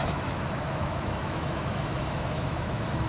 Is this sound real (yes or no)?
no